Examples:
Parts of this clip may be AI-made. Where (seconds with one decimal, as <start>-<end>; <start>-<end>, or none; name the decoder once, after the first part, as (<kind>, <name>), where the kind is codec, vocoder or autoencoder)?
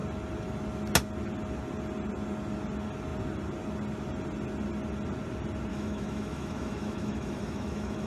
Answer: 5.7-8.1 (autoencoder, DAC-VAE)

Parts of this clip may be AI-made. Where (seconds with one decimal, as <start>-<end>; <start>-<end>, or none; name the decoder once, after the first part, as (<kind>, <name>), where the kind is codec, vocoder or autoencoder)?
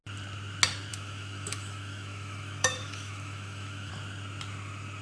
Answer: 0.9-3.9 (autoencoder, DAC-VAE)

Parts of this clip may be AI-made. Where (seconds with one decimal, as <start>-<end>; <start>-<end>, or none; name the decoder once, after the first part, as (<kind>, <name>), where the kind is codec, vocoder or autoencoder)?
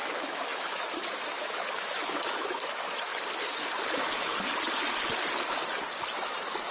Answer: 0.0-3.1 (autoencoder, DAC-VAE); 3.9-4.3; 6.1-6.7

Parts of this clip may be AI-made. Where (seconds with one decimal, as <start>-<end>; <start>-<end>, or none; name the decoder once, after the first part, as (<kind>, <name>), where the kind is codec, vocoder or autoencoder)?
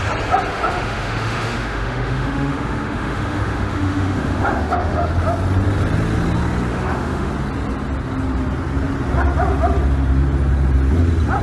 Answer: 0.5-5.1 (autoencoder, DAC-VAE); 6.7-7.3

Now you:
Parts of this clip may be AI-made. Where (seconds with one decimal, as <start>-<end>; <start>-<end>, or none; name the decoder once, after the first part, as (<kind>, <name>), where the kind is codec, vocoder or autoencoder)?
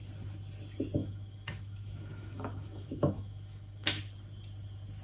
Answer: 1.0-4.0 (autoencoder, DAC-VAE)